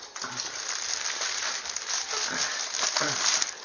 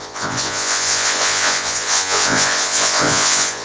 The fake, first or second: second